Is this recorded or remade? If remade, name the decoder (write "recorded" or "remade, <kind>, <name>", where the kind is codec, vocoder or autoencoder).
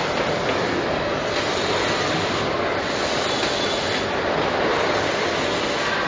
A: recorded